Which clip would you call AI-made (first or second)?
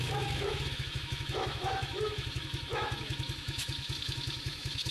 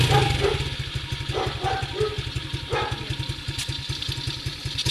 first